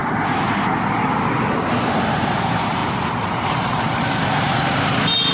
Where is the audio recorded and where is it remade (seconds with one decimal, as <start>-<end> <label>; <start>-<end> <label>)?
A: 0.0-2.2 recorded; 2.2-2.8 remade; 2.8-3.4 recorded; 3.4-5.3 remade